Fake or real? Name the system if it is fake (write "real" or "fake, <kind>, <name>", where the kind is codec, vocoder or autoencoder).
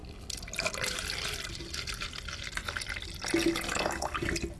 real